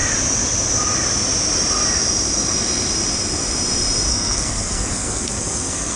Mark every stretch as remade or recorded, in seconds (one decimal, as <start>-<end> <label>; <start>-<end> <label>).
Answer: 0.0-4.1 recorded; 4.1-6.0 remade